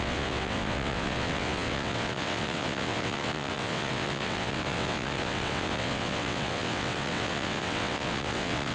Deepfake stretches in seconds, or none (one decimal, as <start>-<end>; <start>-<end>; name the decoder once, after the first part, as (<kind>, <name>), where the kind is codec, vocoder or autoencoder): 0.0-8.7 (vocoder, WaveNeXt)